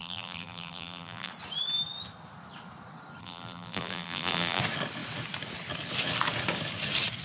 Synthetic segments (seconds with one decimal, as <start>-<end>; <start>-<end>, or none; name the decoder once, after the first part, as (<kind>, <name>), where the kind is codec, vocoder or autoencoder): 0.0-1.3 (vocoder, BigVGAN v2); 3.2-4.6